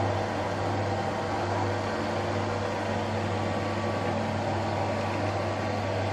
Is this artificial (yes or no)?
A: no